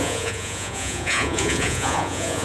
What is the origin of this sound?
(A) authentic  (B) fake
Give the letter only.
B